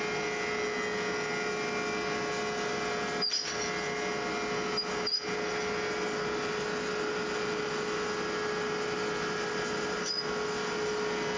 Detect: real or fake real